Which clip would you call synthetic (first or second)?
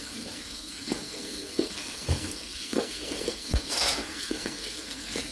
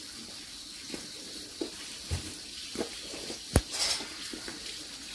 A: first